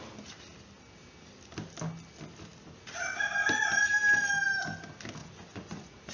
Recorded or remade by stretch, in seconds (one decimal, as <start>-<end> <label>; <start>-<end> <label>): 0.0-5.2 recorded; 5.2-6.1 remade

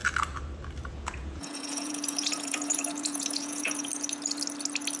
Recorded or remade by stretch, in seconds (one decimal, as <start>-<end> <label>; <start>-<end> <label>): 0.0-0.9 recorded; 0.9-3.9 remade; 3.9-5.0 recorded

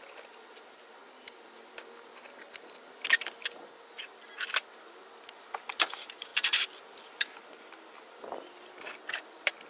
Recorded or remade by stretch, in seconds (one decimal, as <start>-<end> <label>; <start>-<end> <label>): 0.0-1.0 remade; 1.0-3.9 recorded; 3.9-9.7 remade

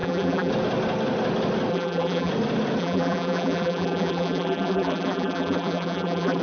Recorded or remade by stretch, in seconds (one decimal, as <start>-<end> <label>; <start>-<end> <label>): 0.0-0.5 remade; 0.5-1.7 recorded; 1.7-2.3 remade; 2.3-2.8 recorded; 2.8-6.4 remade

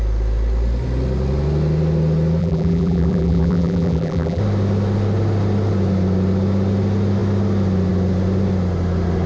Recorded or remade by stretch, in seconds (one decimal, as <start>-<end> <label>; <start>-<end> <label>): 0.0-2.4 recorded; 2.4-4.4 remade; 4.4-9.3 recorded

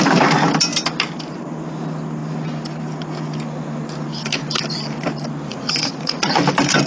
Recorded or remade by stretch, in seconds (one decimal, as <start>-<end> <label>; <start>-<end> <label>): 0.0-5.5 recorded; 5.5-6.4 remade; 6.4-6.9 recorded

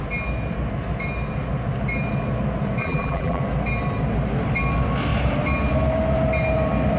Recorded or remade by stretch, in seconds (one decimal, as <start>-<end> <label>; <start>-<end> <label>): 0.0-2.8 recorded; 2.8-3.4 remade; 3.4-7.0 recorded